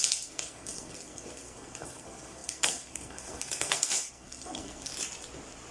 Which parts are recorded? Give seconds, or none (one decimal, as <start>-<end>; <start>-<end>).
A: 4.9-5.7